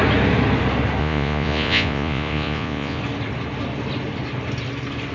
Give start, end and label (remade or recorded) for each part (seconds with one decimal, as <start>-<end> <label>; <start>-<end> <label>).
0.0-1.0 recorded; 1.0-3.0 remade; 3.0-5.1 recorded